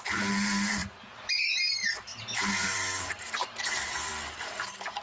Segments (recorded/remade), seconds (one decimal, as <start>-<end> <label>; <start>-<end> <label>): 0.0-0.8 recorded; 0.8-1.5 remade; 1.5-2.1 recorded; 2.1-4.1 remade; 4.1-5.0 recorded